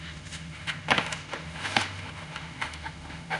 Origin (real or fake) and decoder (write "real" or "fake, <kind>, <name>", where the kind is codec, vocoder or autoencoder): fake, autoencoder, DAC-VAE